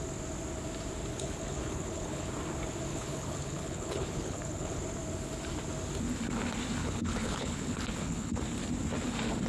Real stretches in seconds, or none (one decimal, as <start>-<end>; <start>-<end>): 0.0-1.1; 2.3-2.9; 4.8-6.8; 8.4-9.5